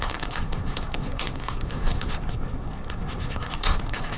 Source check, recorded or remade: remade